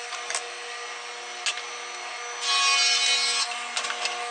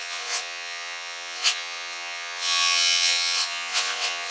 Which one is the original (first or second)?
first